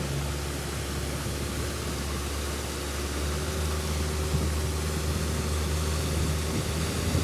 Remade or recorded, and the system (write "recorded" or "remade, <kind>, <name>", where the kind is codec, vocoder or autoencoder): recorded